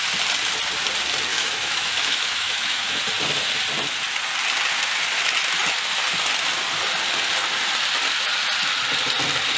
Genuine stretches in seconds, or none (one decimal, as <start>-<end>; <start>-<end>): 0.0-1.3; 3.0-9.6